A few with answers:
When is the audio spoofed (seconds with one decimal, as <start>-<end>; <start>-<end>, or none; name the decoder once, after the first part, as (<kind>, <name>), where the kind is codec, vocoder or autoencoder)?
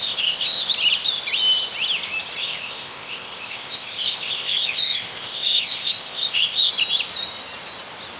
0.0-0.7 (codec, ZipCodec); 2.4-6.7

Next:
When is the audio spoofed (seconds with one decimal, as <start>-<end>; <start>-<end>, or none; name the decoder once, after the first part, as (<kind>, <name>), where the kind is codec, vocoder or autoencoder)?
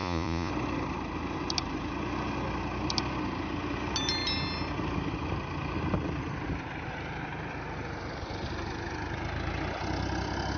0.0-0.5 (vocoder, Vocos)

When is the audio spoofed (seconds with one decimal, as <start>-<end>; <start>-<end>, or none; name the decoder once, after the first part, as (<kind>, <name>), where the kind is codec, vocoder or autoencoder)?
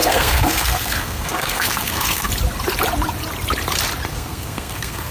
0.0-2.3 (codec, SNAC); 4.1-5.1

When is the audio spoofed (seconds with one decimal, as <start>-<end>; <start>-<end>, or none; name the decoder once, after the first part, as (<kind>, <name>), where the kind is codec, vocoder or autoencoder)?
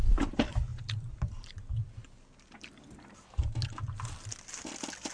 0.7-1.5 (vocoder, BigVGAN v2)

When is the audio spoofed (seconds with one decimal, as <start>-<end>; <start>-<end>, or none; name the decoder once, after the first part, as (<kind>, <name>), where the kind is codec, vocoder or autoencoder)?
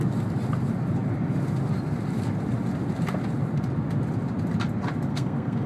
5.1-5.7 (codec, SNAC)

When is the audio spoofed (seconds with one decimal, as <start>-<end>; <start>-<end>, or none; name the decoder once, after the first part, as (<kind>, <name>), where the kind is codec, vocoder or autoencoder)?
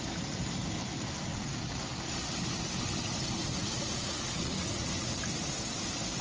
1.3-1.8 (vocoder, Vocos); 3.4-5.2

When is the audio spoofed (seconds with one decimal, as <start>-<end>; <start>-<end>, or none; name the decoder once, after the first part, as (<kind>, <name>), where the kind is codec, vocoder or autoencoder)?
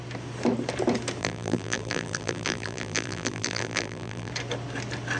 1.2-4.3 (vocoder, BigVGAN v2)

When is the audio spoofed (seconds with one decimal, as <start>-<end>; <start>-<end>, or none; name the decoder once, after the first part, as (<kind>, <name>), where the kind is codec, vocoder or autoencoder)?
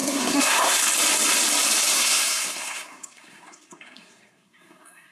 0.0-0.8 (codec, SNAC); 1.9-5.1